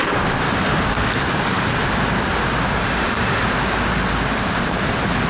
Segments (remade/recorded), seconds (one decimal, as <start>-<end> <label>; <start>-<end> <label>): 0.0-2.8 recorded; 2.8-3.4 remade; 3.4-5.3 recorded